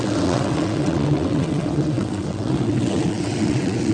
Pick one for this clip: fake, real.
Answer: fake